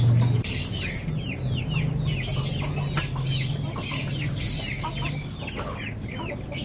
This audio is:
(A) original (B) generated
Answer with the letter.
A